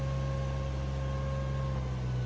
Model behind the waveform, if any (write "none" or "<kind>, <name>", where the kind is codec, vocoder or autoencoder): none